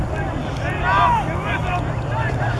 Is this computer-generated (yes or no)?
no